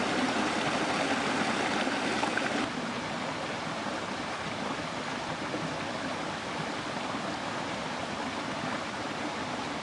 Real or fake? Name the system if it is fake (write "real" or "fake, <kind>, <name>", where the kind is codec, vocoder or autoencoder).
real